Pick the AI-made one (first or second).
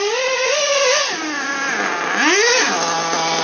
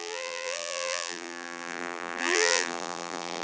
second